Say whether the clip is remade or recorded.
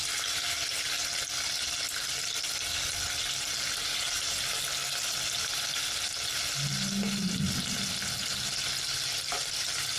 recorded